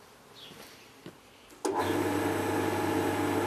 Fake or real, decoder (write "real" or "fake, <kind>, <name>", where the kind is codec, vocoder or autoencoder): real